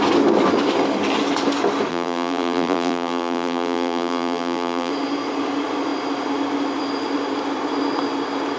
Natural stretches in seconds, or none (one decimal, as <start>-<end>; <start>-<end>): 0.0-1.9; 4.9-8.6